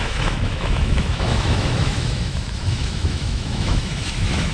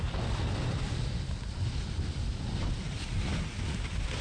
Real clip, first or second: second